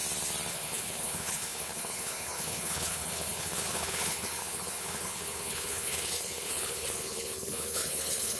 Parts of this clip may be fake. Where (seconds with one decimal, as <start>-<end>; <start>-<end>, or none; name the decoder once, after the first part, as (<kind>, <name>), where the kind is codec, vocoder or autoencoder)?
0.5-8.4 (codec, HILCodec)